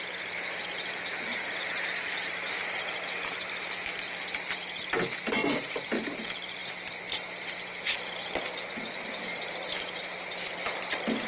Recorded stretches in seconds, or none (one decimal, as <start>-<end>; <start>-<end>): 0.0-11.3